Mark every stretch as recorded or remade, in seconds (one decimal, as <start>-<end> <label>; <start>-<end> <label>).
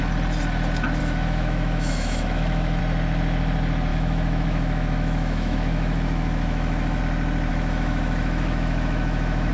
0.0-1.0 recorded; 1.0-2.8 remade; 2.8-3.9 recorded; 3.9-7.0 remade; 7.0-7.5 recorded; 7.5-9.5 remade